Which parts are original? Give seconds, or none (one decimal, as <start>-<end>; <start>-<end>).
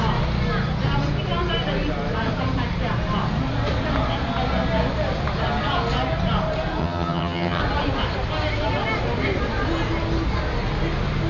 0.0-6.8; 7.6-11.3